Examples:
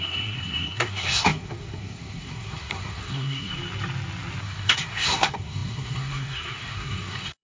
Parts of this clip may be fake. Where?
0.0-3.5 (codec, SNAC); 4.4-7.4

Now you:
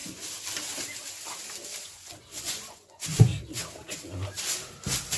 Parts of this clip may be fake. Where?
1.8-3.3 (vocoder, Vocos)

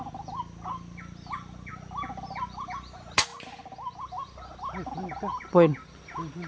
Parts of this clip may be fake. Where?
none

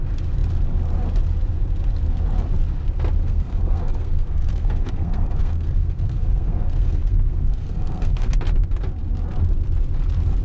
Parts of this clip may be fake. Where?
3.2-8.3 (codec, SNAC)